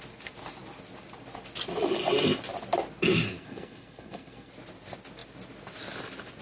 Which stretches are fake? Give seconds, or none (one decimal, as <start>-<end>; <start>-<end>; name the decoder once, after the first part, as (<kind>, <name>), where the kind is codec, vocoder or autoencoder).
3.3-4.5 (codec, SNAC)